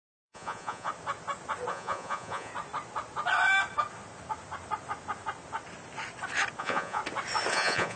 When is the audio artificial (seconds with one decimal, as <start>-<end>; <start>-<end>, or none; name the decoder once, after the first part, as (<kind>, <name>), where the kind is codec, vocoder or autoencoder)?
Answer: 0.0-0.9 (vocoder, Vocos); 1.7-2.5; 6.6-7.0; 7.5-8.0